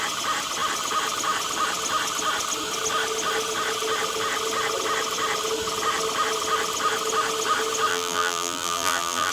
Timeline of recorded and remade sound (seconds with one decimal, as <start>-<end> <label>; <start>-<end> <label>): 0.0-7.9 recorded; 7.9-9.3 remade